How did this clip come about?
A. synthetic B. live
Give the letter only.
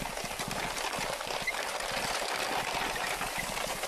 B